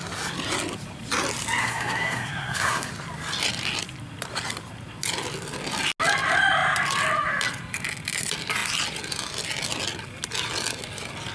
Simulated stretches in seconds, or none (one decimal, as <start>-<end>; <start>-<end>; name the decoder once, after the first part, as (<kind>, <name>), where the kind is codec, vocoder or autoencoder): 1.6-2.9 (codec, SNAC)